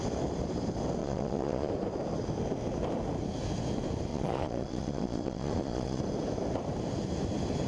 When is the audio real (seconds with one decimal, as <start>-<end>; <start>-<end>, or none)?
0.0-1.0; 1.7-4.1; 6.0-7.7